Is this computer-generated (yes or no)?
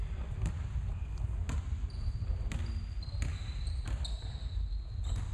no